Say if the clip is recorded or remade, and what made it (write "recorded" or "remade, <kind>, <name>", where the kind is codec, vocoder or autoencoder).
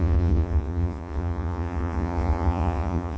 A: remade, vocoder, Vocos